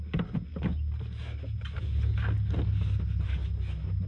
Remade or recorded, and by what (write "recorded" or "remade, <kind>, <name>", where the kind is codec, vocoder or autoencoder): recorded